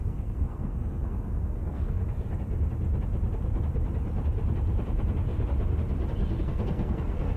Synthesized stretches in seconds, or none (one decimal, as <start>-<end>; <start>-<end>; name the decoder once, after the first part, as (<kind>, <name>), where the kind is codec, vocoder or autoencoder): 0.0-2.0 (codec, SNAC); 6.4-7.4